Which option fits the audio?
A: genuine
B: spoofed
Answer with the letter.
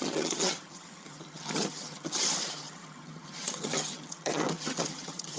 B